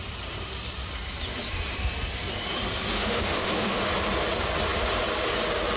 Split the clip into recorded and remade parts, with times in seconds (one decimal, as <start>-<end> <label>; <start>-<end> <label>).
0.0-2.9 recorded; 2.9-3.8 remade; 3.8-5.8 recorded